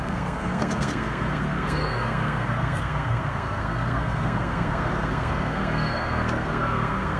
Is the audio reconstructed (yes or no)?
yes